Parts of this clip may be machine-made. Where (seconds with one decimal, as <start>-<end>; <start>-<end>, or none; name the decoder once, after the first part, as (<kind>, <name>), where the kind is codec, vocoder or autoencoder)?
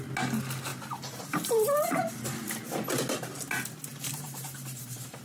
0.7-2.5 (vocoder, BigVGAN v2); 3.9-5.2